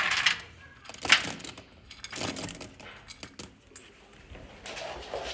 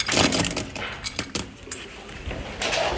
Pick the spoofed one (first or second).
second